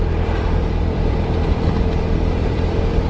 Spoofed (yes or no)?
yes